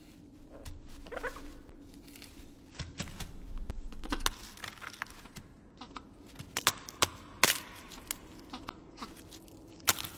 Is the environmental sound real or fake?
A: real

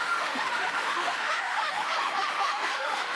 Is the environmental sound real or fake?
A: fake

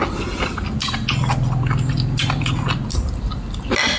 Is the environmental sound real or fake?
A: real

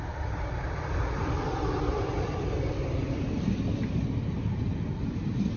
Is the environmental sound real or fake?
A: fake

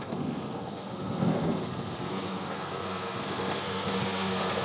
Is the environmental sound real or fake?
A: fake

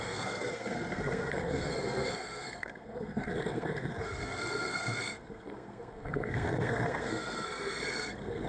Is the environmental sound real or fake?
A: fake